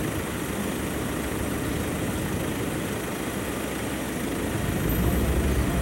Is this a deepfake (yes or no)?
no